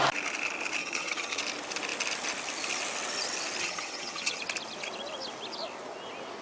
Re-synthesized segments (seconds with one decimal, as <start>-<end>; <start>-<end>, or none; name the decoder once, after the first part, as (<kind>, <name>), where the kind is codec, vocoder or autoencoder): 0.8-1.4 (vocoder, HiFi-GAN); 3.6-4.4